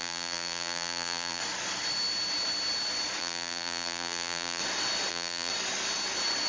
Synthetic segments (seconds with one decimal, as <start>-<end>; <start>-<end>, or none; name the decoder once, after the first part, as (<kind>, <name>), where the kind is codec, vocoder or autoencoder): 0.0-1.4 (vocoder, BigVGAN v2); 3.2-4.6; 5.1-5.5